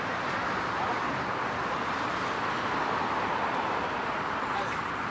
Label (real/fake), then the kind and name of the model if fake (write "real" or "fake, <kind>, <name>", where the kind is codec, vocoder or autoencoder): fake, vocoder, BigVGAN v2